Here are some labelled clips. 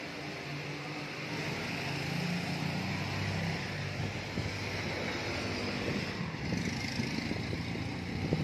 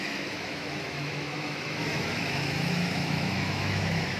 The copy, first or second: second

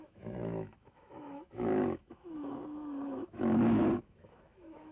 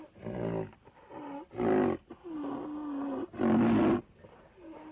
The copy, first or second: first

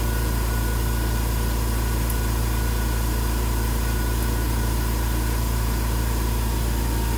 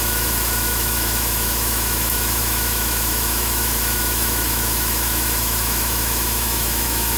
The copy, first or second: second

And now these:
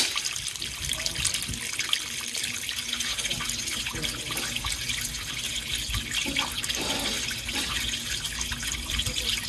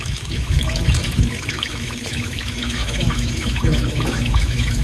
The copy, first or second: second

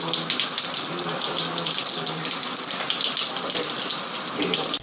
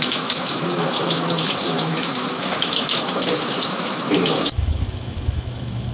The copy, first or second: second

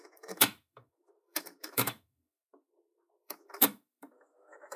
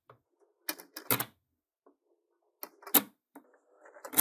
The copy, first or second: first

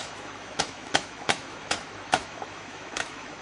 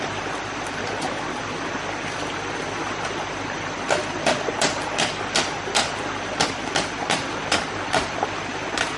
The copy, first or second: first